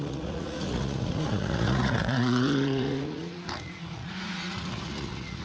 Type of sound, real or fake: fake